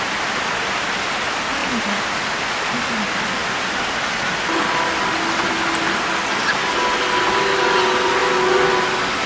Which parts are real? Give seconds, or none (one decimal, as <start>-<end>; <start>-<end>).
0.0-9.3